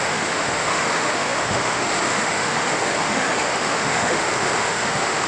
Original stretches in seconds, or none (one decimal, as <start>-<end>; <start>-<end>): none